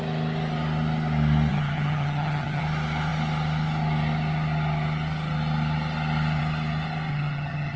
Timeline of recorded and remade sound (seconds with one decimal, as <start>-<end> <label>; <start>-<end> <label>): 0.0-1.5 recorded; 1.5-2.6 remade; 2.6-7.1 recorded; 7.1-7.8 remade